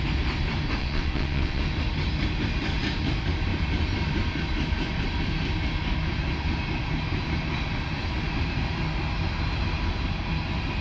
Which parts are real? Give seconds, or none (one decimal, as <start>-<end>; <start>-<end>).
0.0-0.8; 1.6-10.8